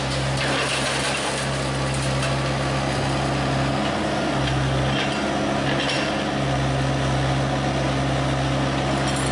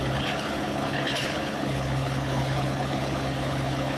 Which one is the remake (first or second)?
second